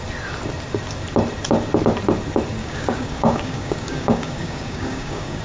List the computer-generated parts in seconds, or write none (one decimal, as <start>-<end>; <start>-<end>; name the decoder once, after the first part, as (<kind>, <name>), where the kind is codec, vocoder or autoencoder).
2.6-5.4 (codec, DAC)